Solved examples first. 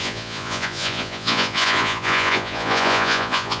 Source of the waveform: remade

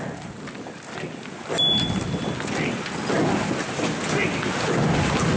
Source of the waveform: recorded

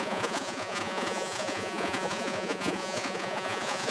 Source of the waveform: remade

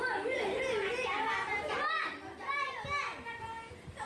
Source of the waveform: recorded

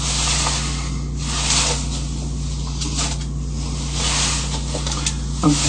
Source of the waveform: recorded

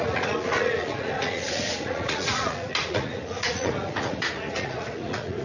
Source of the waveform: remade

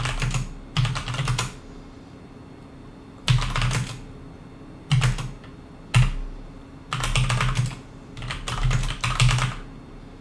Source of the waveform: recorded